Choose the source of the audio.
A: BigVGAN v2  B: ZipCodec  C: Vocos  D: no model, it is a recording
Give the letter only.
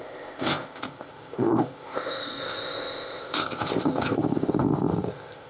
B